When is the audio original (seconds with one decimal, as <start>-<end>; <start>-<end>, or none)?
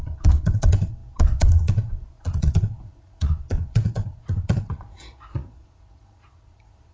none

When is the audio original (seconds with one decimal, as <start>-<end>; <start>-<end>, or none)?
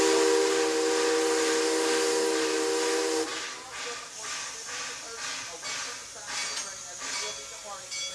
0.0-8.1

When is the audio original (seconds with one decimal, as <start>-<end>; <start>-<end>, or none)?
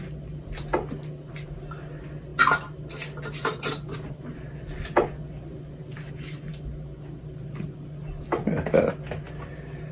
0.0-9.9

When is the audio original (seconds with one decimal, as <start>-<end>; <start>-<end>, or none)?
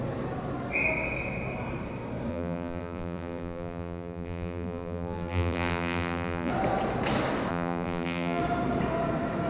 0.0-2.3; 6.5-7.5; 8.4-9.5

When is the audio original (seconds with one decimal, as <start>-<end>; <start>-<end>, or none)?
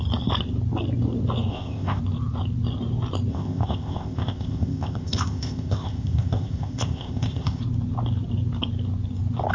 0.0-1.5; 2.0-3.3; 7.6-9.5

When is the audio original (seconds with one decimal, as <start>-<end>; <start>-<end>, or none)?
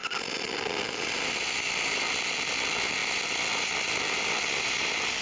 0.0-5.2